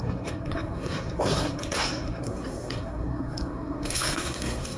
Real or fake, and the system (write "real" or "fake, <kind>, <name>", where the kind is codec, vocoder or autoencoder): fake, codec, SNAC